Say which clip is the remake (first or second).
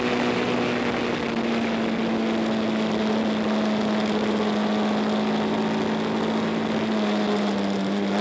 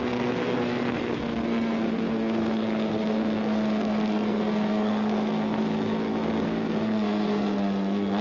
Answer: second